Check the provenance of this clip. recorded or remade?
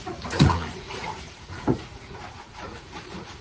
remade